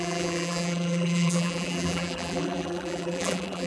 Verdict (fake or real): fake